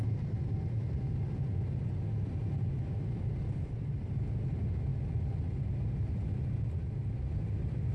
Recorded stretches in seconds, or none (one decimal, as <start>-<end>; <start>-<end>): 0.0-7.9